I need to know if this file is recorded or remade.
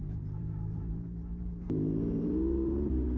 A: remade